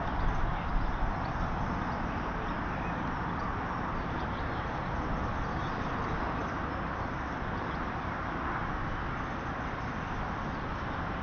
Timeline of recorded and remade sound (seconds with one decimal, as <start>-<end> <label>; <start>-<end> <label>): 0.0-11.2 recorded